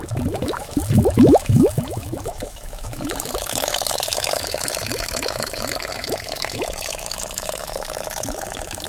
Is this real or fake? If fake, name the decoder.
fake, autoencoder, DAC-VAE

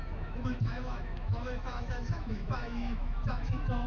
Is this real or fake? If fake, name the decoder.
fake, autoencoder, DAC-VAE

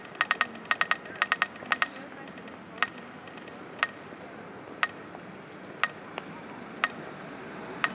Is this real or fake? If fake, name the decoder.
real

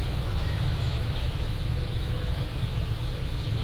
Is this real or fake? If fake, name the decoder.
fake, autoencoder, DAC-VAE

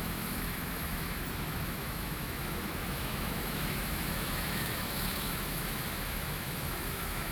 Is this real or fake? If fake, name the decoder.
fake, autoencoder, DAC-VAE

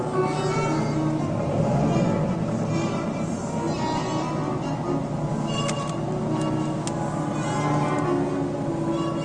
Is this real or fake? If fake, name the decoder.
real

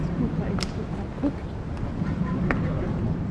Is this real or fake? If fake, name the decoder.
real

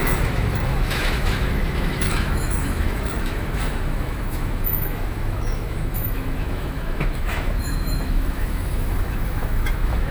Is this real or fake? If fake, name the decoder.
fake, autoencoder, DAC-VAE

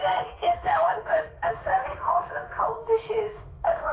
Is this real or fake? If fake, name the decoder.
fake, autoencoder, DAC-VAE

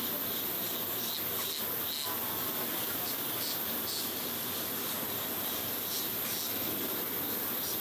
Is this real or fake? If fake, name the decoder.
real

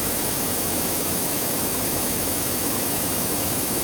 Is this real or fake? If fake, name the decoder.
fake, autoencoder, DAC-VAE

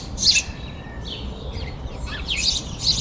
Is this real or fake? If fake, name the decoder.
real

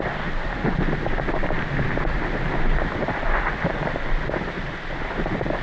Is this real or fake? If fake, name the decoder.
real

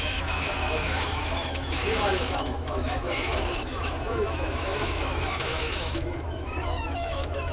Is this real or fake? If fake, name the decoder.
fake, autoencoder, DAC-VAE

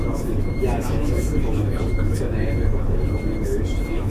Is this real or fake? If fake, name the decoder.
fake, autoencoder, DAC-VAE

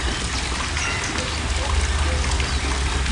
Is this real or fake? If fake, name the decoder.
real